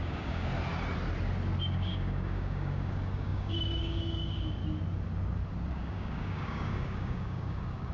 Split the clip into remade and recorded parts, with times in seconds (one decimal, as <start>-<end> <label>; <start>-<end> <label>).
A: 0.0-0.5 remade; 0.5-1.6 recorded; 1.6-4.6 remade; 4.6-5.7 recorded; 5.7-7.9 remade